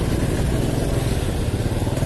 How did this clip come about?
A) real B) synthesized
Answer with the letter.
A